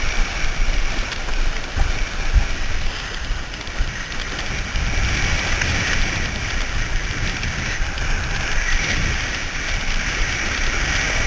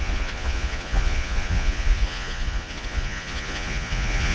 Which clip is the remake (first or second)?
second